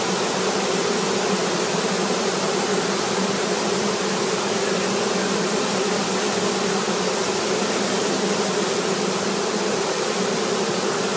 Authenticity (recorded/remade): recorded